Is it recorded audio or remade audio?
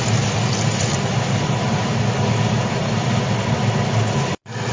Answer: recorded